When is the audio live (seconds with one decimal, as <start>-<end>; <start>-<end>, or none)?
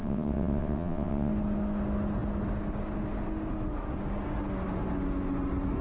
1.3-5.8